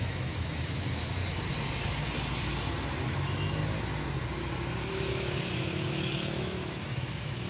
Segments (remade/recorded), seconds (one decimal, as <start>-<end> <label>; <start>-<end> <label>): 0.0-1.2 remade; 1.2-3.0 recorded; 3.0-3.6 remade; 3.6-4.9 recorded; 4.9-7.5 remade